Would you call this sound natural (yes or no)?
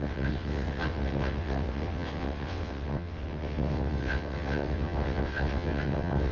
no